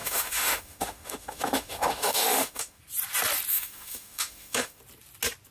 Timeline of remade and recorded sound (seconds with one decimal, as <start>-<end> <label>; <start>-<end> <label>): 0.0-2.8 remade; 2.8-3.5 recorded; 3.5-4.8 remade; 4.8-5.5 recorded